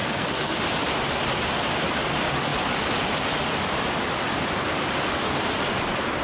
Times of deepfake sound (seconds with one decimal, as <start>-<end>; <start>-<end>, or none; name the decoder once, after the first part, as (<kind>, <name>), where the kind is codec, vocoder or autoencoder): 0.0-0.6 (codec, SNAC)